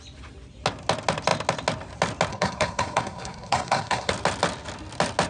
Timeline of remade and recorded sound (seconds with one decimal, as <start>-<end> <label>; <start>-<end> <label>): 0.0-2.3 recorded; 2.3-4.1 remade; 4.1-5.3 recorded